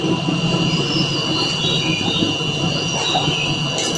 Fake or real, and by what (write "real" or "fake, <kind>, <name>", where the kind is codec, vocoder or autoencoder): real